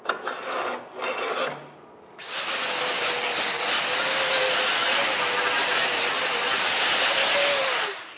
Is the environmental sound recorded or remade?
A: recorded